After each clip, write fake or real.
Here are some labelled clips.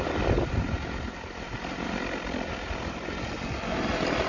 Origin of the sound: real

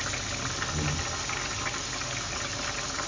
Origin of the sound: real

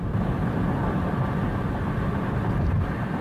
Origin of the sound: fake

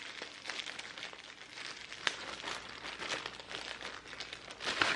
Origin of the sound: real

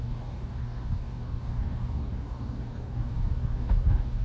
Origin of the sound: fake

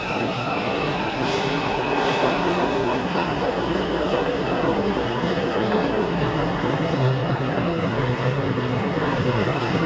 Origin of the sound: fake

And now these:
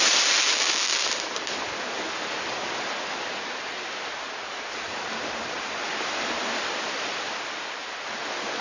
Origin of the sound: real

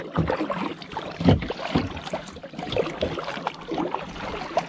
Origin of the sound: real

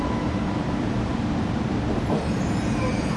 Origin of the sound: real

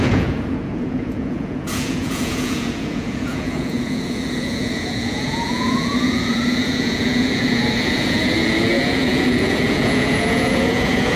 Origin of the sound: fake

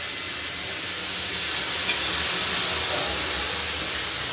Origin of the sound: real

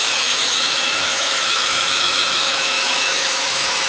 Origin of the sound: fake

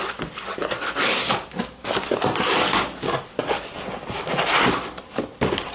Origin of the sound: real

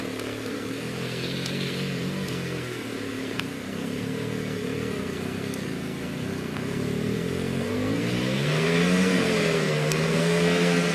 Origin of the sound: fake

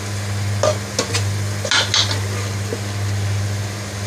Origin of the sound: real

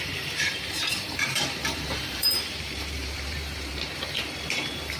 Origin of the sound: fake